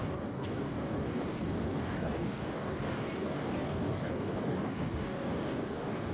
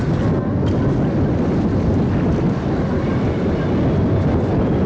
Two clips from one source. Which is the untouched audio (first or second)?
second